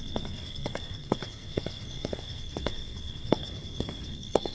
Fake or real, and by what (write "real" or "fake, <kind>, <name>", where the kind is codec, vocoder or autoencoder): fake, codec, SNAC